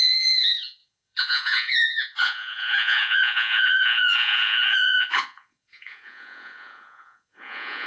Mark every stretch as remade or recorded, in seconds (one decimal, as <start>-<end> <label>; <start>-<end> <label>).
0.0-7.9 remade